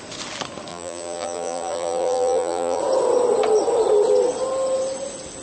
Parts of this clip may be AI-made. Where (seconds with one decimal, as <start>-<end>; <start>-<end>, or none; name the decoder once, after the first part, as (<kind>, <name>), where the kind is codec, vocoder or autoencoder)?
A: 0.7-2.8 (vocoder, BigVGAN v2)